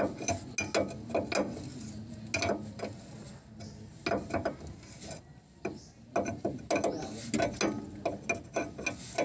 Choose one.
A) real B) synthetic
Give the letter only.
A